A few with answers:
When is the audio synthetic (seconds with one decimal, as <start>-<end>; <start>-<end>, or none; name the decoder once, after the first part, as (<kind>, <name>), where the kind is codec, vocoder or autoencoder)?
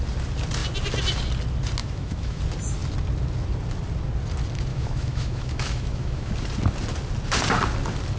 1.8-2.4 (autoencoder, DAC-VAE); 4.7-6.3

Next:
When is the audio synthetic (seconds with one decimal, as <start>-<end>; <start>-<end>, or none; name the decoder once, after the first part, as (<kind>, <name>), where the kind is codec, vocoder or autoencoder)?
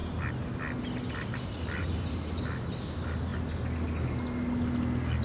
1.8-2.4 (vocoder, BigVGAN v2)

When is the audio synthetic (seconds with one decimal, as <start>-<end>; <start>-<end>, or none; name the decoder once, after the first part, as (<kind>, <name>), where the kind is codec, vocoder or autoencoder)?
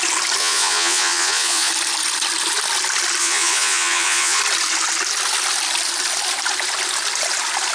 0.4-1.7 (vocoder, Vocos); 3.2-4.4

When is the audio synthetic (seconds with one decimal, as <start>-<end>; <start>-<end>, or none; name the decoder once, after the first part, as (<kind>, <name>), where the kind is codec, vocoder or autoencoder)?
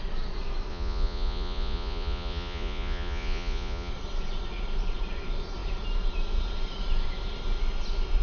0.7-3.9 (vocoder, Vocos)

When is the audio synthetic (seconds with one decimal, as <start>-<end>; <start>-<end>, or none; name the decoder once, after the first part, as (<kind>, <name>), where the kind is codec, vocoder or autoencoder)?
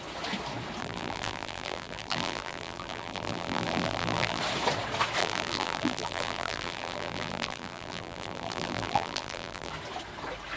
0.8-4.4 (vocoder, BigVGAN v2); 5.2-9.7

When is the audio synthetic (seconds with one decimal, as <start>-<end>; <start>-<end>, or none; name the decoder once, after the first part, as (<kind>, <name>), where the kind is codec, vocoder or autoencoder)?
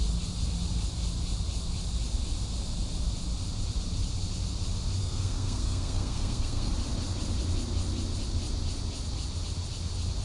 5.0-6.7 (codec, SNAC)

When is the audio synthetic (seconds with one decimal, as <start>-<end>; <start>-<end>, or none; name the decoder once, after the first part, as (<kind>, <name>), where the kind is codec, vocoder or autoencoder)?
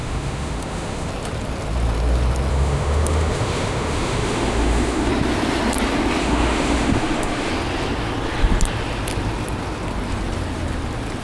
0.0-1.1 (autoencoder, DAC-VAE); 2.5-5.1; 6.2-7.5